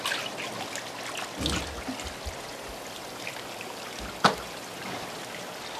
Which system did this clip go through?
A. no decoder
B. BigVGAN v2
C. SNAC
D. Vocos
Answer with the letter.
A